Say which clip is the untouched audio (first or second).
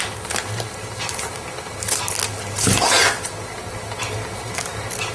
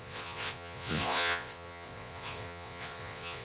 first